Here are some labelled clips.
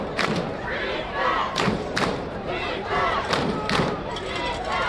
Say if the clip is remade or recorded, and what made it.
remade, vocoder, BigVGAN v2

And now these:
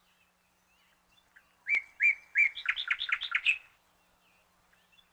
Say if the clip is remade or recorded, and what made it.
recorded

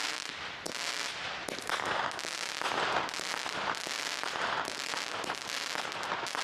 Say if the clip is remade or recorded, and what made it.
recorded